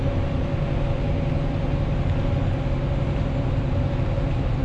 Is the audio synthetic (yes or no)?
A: no